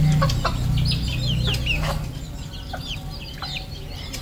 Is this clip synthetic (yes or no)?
no